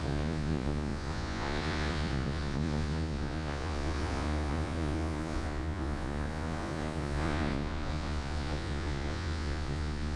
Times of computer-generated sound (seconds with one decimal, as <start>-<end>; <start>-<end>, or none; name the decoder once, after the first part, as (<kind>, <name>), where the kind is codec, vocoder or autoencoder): 0.0-10.2 (vocoder, Vocos)